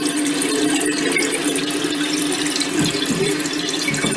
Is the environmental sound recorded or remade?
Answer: recorded